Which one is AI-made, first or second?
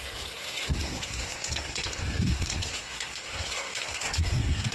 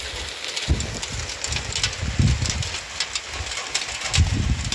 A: first